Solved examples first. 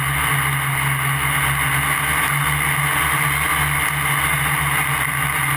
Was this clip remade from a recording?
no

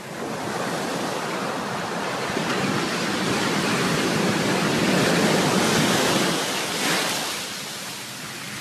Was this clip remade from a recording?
no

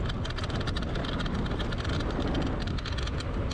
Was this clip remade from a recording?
no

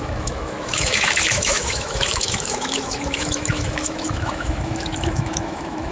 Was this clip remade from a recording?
yes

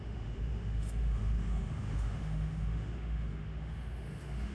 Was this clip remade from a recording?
yes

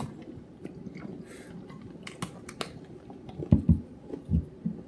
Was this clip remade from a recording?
no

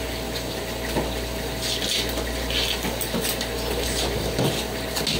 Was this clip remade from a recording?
no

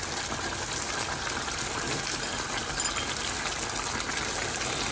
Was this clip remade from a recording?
no